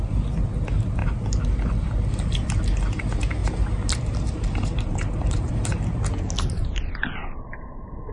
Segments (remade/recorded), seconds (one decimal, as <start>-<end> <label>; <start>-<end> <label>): 0.0-3.4 recorded; 3.4-5.5 remade; 5.5-7.2 recorded; 7.2-8.1 remade